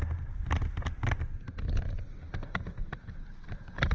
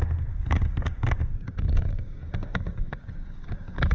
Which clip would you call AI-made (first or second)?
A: second